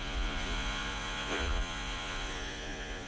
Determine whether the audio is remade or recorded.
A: remade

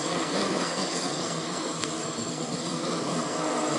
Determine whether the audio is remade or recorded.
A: remade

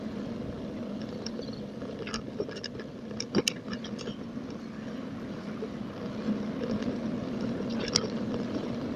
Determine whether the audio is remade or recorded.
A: recorded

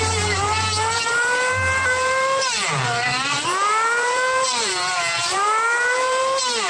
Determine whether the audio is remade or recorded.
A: remade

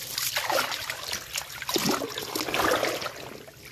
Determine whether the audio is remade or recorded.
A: recorded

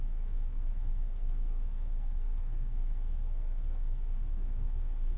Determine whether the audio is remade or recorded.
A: remade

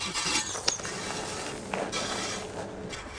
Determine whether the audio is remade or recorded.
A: recorded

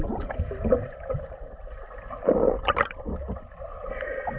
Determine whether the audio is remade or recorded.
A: recorded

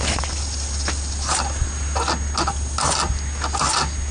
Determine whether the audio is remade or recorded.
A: recorded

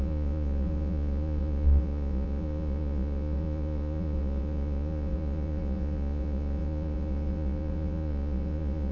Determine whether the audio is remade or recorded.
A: remade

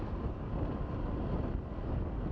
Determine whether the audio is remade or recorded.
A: recorded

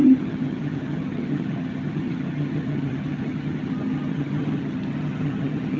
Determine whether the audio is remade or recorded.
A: remade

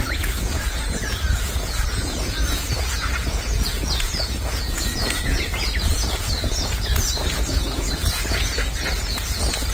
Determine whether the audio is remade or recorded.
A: remade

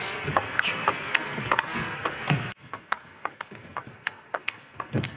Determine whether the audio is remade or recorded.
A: remade